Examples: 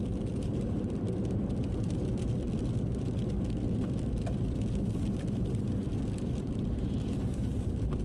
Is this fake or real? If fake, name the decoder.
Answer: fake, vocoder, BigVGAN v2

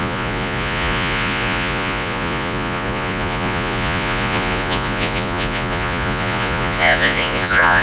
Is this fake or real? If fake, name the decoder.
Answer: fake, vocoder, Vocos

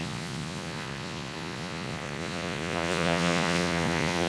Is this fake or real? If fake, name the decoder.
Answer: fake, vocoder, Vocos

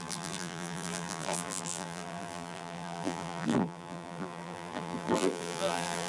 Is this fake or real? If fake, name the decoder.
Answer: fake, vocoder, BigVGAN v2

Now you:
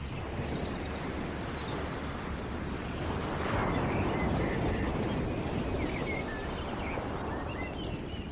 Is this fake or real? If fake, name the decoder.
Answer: real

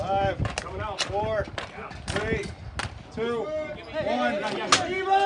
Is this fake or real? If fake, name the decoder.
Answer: real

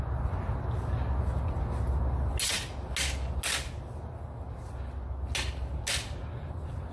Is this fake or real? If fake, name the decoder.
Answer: real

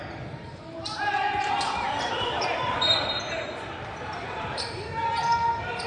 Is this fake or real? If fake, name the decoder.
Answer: fake, vocoder, BigVGAN v2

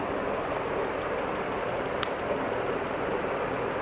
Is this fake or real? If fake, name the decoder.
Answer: real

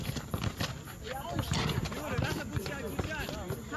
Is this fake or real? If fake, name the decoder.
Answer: real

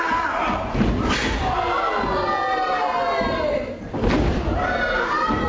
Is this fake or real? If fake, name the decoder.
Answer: real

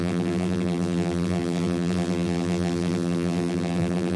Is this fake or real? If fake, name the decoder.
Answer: fake, vocoder, BigVGAN v2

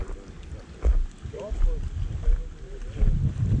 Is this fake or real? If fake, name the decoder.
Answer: real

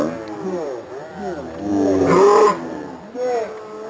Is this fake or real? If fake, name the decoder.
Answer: real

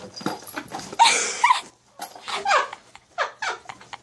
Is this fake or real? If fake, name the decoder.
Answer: real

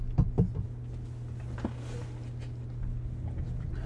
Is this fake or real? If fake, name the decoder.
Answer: real